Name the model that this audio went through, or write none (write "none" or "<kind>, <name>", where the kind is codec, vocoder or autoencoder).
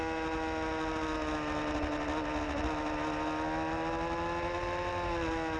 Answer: none